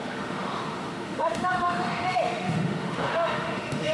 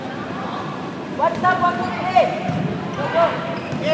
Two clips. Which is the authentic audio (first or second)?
second